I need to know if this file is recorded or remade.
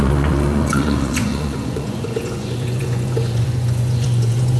remade